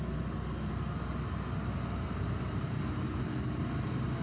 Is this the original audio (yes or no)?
yes